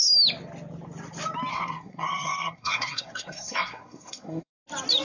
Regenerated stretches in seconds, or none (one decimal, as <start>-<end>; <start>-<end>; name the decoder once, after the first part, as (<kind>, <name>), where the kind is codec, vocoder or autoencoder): 1.5-4.5 (codec, SNAC)